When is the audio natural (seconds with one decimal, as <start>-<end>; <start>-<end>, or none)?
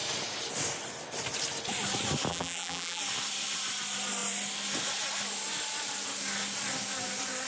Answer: 0.0-2.3; 3.0-7.5